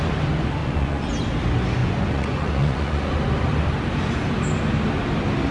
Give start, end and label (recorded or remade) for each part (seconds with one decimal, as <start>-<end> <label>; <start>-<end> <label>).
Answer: 0.0-0.6 recorded; 0.6-1.1 remade; 1.1-1.8 recorded; 1.8-3.1 remade; 3.1-5.5 recorded